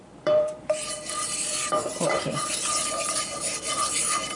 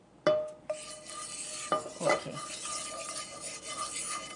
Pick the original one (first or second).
second